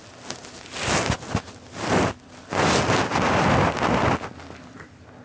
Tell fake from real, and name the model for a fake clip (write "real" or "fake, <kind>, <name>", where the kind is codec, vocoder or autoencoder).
real